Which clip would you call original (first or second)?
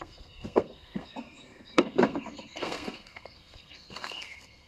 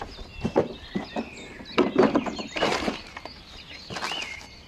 second